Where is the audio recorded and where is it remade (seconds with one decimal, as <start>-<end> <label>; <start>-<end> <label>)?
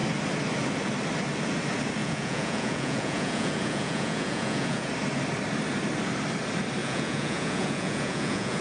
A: 0.0-2.0 recorded; 2.0-4.9 remade; 4.9-6.8 recorded; 6.8-8.6 remade